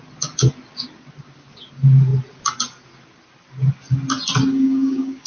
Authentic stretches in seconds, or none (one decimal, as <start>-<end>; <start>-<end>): 0.0-4.5